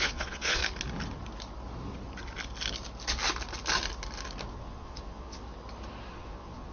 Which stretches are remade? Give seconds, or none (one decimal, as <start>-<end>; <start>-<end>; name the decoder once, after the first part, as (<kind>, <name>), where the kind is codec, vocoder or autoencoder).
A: 0.0-0.6 (vocoder, Vocos); 4.5-5.4; 6.1-6.7